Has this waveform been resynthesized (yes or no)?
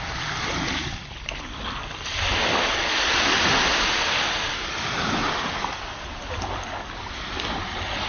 no